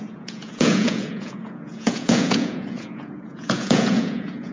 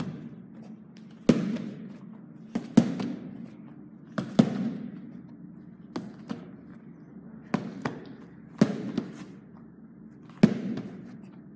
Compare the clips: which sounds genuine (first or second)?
second